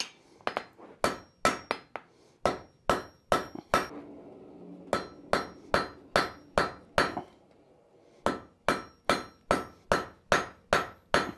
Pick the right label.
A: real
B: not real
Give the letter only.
A